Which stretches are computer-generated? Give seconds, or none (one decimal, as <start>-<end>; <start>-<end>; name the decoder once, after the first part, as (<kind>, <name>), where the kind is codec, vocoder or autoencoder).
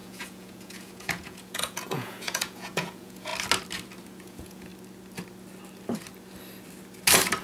0.0-3.3 (vocoder, Vocos); 4.2-4.7